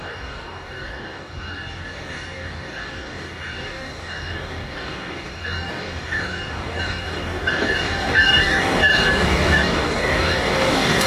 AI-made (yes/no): yes